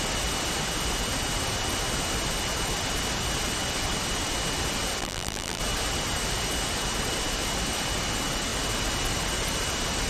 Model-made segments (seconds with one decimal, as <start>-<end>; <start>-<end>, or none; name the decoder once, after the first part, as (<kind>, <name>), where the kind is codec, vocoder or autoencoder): 5.0-5.6 (vocoder, BigVGAN v2)

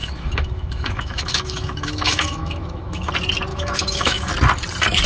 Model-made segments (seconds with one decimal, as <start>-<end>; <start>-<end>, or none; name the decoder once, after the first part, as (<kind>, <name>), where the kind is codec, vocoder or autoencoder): 0.0-3.1 (autoencoder, DAC-VAE); 3.5-4.3

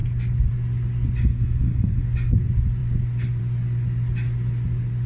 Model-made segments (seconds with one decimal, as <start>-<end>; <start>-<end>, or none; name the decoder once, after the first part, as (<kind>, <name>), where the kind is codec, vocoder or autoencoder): 1.3-2.0 (codec, SNAC)

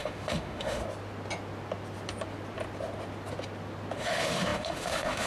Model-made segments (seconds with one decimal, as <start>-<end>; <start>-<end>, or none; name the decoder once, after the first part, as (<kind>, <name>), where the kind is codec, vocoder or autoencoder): 0.0-0.8 (autoencoder, DAC-VAE); 4.0-5.3

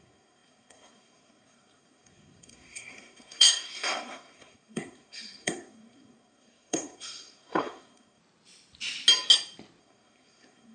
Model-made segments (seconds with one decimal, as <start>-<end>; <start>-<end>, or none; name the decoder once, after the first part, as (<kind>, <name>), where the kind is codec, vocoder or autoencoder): 0.0-8.2 (codec, SNAC); 9.8-10.7

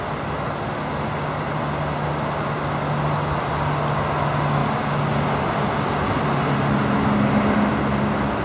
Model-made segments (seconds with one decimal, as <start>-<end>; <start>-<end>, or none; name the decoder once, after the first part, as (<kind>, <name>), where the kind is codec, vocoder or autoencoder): none

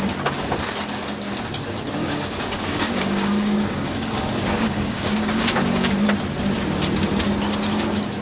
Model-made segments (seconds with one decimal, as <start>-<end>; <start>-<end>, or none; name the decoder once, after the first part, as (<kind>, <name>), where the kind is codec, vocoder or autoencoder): 2.0-5.9 (codec, DAC)

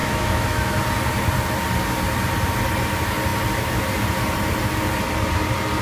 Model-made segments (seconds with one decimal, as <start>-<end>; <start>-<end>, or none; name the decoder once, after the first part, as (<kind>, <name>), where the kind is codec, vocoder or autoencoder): 0.0-0.8 (autoencoder, DAC-VAE)